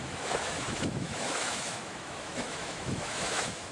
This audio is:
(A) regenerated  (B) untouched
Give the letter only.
A